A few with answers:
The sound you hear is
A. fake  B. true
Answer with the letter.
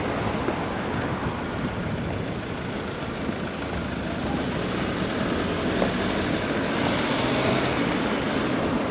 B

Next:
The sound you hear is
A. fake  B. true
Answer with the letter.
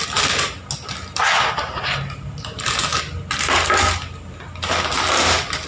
B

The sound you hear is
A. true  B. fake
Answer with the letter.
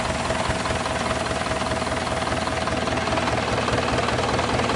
A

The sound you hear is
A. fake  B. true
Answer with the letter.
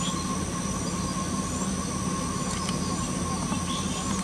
B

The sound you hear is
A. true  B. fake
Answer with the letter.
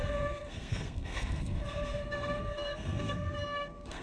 B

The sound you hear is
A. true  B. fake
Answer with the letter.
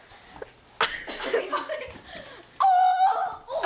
A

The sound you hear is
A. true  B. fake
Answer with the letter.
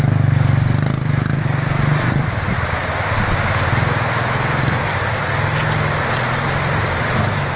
A